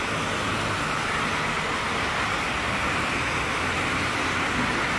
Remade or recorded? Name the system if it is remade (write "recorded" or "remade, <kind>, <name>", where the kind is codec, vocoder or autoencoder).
recorded